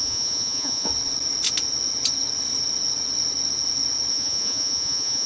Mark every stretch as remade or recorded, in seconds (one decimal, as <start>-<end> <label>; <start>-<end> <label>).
0.0-0.9 remade; 0.9-4.1 recorded; 4.1-5.3 remade